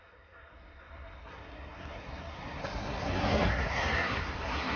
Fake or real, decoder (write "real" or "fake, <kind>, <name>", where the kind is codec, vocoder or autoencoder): fake, codec, SNAC